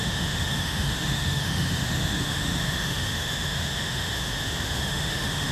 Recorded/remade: remade